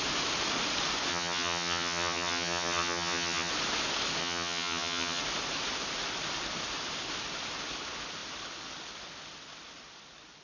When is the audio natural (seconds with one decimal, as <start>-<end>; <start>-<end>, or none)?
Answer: 0.0-1.1; 3.5-4.2; 5.2-10.4